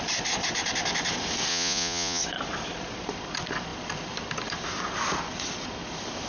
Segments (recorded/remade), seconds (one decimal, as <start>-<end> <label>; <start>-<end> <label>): 0.0-1.5 recorded; 1.5-2.2 remade; 2.2-6.3 recorded